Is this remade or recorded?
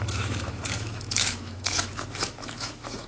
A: remade